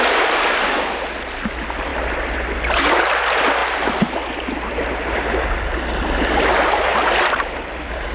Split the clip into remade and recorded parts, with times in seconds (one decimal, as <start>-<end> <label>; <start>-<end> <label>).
0.0-1.9 recorded; 1.9-2.9 remade; 2.9-8.1 recorded